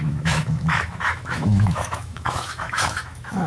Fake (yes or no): yes